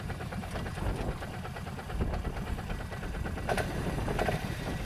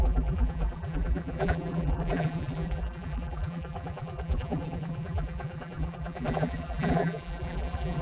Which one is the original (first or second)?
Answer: first